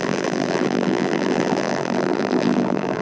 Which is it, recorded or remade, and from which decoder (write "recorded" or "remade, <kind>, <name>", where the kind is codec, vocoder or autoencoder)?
remade, vocoder, BigVGAN v2